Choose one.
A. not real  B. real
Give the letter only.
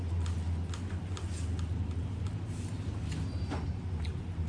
B